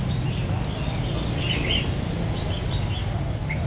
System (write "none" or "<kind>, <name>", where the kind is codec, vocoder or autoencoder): none